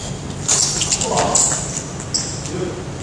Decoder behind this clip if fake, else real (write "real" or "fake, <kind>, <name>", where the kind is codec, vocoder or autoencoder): real